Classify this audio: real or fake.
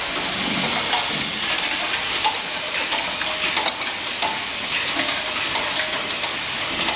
real